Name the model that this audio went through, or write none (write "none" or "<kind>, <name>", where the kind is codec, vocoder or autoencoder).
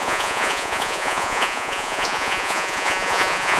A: vocoder, Vocos